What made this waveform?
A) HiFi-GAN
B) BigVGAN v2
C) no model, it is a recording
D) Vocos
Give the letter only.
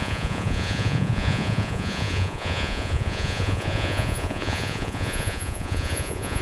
D